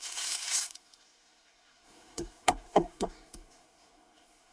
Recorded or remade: remade